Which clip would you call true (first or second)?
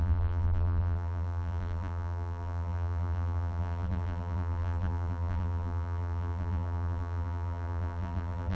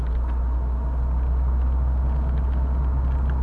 second